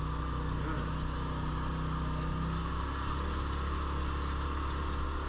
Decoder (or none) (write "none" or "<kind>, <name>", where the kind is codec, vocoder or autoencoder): none